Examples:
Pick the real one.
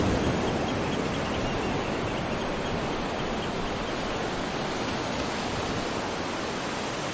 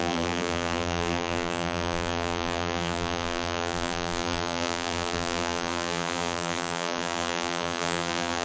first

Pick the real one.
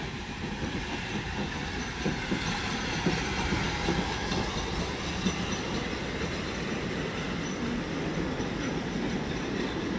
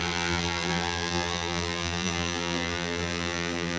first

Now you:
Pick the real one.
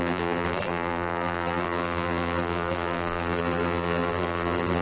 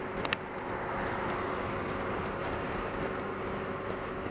second